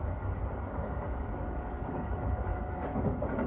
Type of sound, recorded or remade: remade